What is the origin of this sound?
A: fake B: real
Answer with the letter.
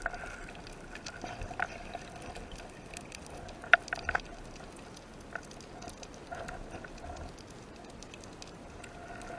B